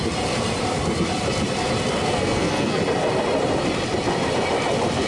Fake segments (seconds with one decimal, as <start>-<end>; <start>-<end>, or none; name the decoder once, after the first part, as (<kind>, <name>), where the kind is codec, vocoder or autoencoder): 2.1-2.8 (codec, SNAC)